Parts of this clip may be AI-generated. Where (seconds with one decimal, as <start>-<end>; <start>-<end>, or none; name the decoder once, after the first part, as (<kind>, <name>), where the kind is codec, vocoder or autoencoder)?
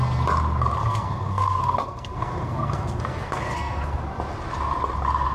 0.8-4.0 (codec, SNAC)